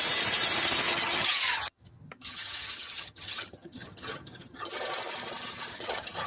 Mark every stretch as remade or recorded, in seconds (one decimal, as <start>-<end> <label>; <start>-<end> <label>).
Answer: 0.0-0.9 recorded; 0.9-4.7 remade; 4.7-5.7 recorded; 5.7-6.3 remade